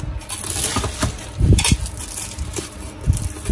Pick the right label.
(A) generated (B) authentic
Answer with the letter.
B